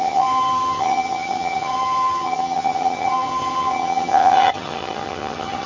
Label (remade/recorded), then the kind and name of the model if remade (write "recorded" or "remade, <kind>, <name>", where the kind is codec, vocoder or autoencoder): remade, vocoder, HiFi-GAN